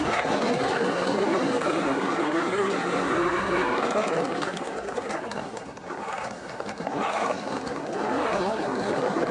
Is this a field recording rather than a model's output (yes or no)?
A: no